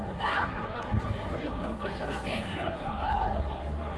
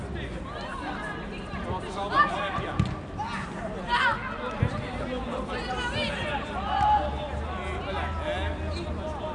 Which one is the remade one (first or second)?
first